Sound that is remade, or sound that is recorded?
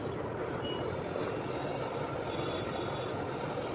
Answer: recorded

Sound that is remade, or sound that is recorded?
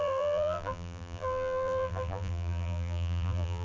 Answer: remade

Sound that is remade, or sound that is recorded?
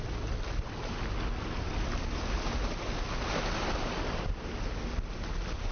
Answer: recorded